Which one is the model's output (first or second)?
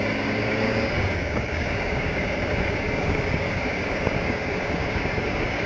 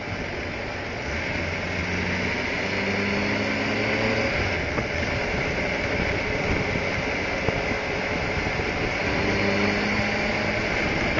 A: first